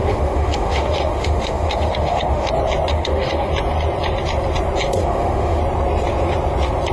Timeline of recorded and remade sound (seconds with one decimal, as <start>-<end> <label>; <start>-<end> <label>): 0.0-2.5 remade; 2.5-2.9 recorded; 2.9-3.5 remade; 3.5-5.0 recorded; 5.0-5.6 remade; 5.6-6.9 recorded